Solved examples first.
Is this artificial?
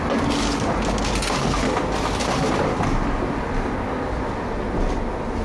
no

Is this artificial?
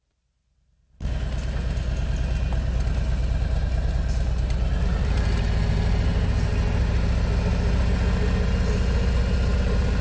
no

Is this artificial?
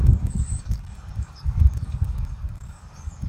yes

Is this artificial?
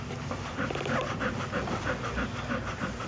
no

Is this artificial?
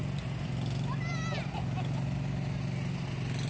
no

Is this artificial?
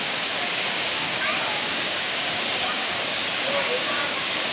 yes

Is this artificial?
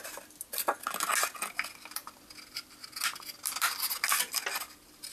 no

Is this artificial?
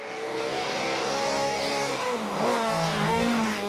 yes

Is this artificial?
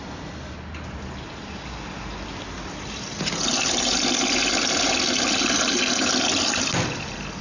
no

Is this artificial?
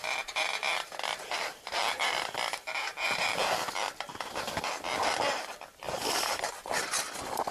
no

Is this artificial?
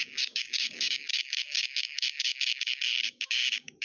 yes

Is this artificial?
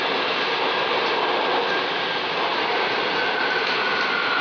no